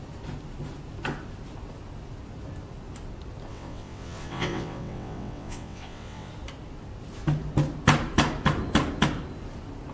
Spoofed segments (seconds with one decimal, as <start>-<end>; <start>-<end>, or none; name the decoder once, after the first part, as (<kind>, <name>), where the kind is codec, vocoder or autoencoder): 3.5-6.3 (vocoder, WaveNeXt)